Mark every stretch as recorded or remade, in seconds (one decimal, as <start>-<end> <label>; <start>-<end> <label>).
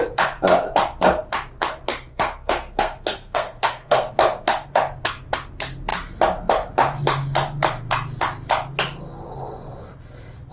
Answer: 0.0-2.1 recorded; 2.1-4.1 remade; 4.1-10.5 recorded